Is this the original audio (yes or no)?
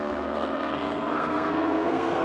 no